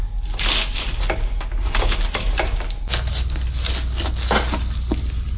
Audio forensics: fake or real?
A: real